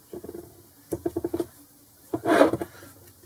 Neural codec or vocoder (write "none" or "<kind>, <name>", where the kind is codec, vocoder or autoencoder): none